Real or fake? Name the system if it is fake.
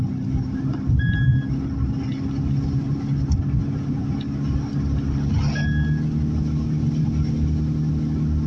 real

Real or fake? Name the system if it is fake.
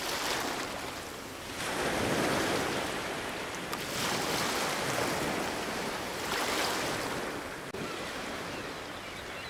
real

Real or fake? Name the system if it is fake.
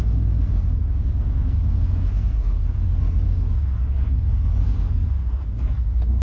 fake, codec, SNAC